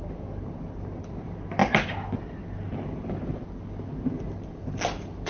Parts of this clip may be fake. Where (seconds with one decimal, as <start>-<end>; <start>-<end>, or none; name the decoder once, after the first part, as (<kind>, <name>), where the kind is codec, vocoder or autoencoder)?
none